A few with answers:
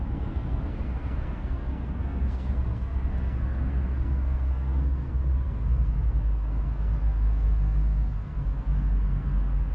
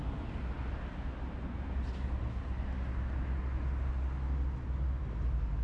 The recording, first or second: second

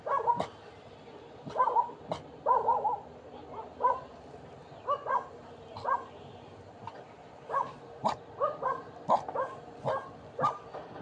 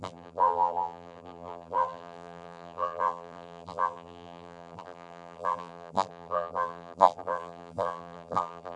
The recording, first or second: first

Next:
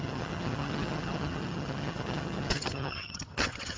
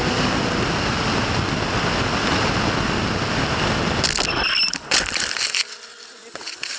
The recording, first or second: second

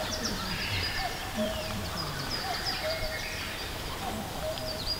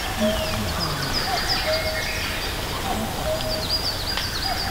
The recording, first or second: second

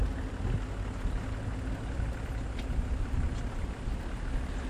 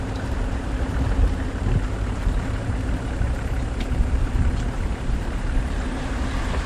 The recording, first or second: first